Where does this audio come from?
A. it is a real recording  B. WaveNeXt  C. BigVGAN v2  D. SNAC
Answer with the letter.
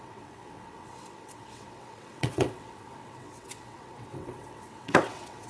B